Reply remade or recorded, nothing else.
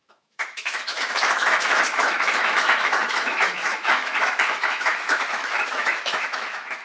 remade